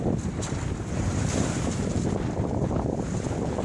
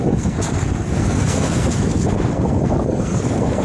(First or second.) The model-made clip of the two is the second